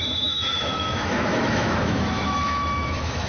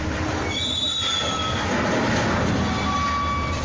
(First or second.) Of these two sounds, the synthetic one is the first